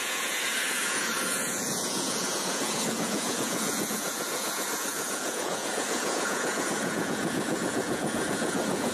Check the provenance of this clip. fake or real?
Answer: fake